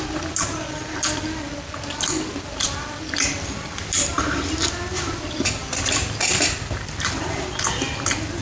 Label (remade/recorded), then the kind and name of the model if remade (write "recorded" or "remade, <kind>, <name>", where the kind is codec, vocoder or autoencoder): recorded